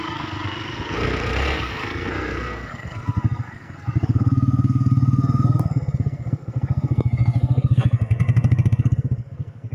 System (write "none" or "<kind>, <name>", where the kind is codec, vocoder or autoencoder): codec, SNAC